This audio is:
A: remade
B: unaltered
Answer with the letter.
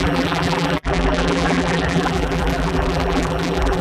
A